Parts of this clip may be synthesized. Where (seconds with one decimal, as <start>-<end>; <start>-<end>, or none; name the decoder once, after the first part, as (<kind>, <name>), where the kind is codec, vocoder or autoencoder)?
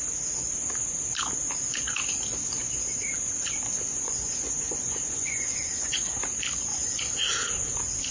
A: 3.9-6.2 (vocoder, Vocos); 6.7-7.2